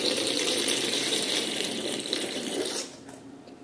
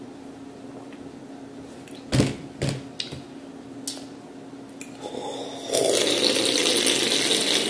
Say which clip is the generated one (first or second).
first